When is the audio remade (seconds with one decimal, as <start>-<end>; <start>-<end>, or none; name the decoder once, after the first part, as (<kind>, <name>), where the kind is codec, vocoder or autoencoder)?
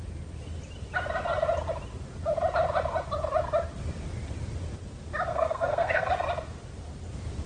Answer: 5.3-6.1 (codec, SNAC)